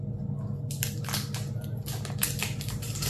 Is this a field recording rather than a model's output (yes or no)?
yes